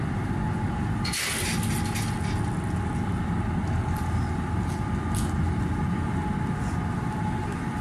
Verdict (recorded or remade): recorded